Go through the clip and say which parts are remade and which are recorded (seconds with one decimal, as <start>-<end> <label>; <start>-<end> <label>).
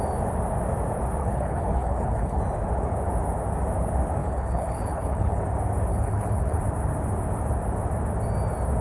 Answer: 0.0-1.2 recorded; 1.2-2.4 remade; 2.4-4.2 recorded; 4.2-5.4 remade; 5.4-5.9 recorded; 5.9-6.6 remade; 6.6-8.8 recorded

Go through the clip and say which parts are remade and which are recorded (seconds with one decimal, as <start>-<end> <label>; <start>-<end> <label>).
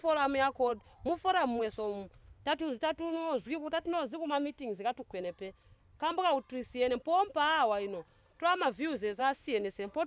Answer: 0.0-2.2 recorded; 2.2-5.2 remade; 5.2-9.2 recorded; 9.2-10.1 remade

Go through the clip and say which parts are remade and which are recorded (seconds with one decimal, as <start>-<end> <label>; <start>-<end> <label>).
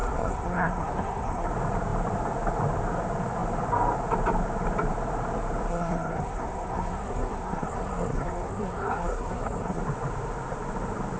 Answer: 0.0-1.5 remade; 1.5-5.7 recorded; 5.7-9.8 remade; 9.8-11.2 recorded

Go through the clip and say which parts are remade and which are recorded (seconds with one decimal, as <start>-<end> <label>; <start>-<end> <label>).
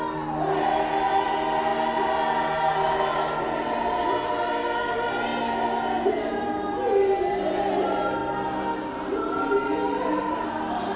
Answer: 0.0-11.0 recorded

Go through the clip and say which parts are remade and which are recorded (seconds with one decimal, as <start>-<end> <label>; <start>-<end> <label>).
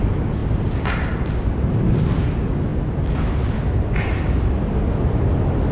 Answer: 0.0-5.7 recorded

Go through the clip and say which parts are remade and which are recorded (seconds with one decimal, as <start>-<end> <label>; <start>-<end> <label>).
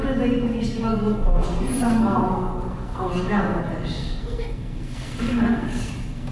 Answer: 0.0-0.5 recorded; 0.5-3.6 remade; 3.6-4.0 recorded; 4.0-6.3 remade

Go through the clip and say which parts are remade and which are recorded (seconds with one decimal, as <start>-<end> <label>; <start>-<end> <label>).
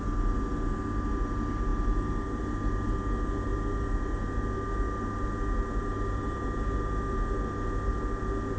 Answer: 0.0-8.6 recorded